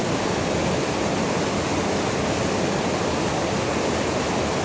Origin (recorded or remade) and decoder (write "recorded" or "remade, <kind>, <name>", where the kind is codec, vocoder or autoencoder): recorded